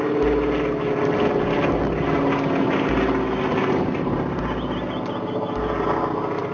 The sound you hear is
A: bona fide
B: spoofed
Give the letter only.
A